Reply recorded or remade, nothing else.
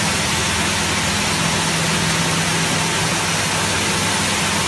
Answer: recorded